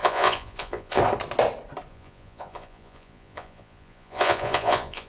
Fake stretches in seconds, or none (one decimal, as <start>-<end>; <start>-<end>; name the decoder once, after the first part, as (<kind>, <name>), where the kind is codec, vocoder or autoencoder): 0.0-1.0 (vocoder, Vocos); 1.9-5.1